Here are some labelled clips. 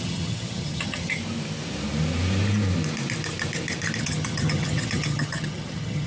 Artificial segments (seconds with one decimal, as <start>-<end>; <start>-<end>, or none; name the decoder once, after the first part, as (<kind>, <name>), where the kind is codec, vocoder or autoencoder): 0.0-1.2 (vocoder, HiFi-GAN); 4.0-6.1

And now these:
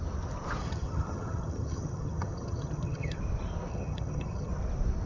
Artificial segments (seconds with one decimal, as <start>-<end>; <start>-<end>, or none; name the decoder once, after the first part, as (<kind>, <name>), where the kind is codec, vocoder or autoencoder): 0.6-3.2 (vocoder, HiFi-GAN); 3.7-4.5

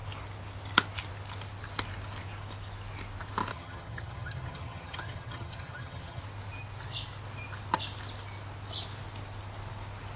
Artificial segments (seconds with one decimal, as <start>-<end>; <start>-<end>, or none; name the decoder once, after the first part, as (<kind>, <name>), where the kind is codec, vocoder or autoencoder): 3.5-6.2 (vocoder, HiFi-GAN)

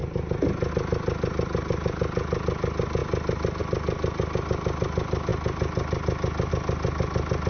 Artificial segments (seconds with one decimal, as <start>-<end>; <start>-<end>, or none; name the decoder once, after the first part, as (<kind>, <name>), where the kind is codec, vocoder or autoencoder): none